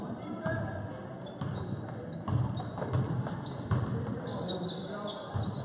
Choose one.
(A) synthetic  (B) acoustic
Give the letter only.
B